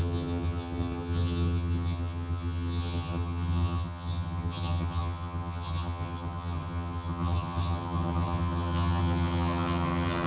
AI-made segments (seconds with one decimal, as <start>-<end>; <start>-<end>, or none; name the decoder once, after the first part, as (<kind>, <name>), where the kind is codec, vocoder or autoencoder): 0.0-10.3 (vocoder, HiFi-GAN)